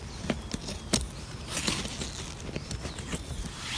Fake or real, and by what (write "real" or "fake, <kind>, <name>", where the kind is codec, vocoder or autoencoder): real